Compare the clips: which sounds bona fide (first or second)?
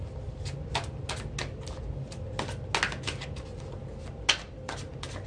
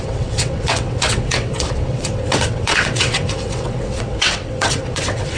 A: first